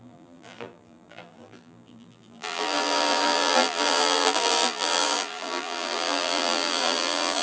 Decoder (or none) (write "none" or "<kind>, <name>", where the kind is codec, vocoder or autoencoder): vocoder, BigVGAN v2